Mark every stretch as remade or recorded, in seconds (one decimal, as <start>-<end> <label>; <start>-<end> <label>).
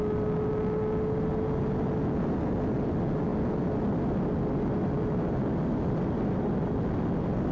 0.0-7.5 recorded